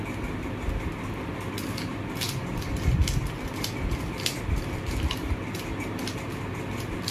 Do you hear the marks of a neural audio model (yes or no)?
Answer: no